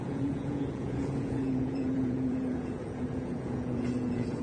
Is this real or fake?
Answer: fake